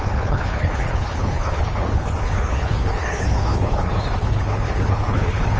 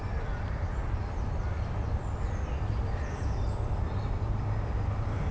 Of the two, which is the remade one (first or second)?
first